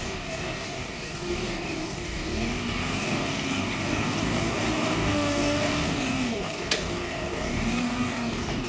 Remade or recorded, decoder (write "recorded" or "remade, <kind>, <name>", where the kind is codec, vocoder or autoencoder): remade, codec, DAC